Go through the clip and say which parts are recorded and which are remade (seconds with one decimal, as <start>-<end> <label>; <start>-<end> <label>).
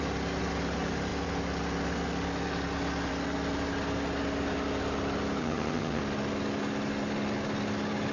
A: 0.0-5.4 recorded; 5.4-6.0 remade; 6.0-8.1 recorded